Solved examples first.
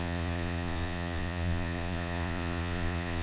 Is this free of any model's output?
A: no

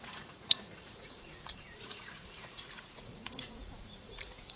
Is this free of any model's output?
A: no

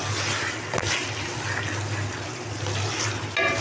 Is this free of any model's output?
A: yes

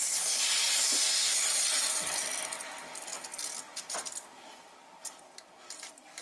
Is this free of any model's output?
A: yes